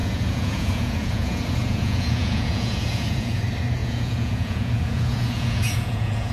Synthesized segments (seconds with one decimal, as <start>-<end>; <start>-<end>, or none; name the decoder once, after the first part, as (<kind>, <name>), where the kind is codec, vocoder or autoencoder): 0.0-3.4 (vocoder, Vocos); 3.8-6.3